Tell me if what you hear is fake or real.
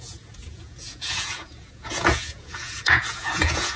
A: fake